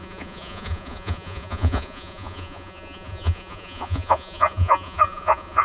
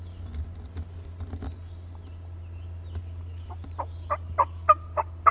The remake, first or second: first